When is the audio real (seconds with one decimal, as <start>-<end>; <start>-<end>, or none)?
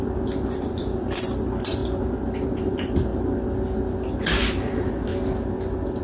1.8-2.4; 3.1-4.2; 5.1-6.0